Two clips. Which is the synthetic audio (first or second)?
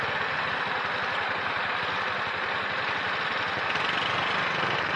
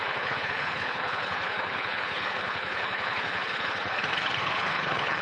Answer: second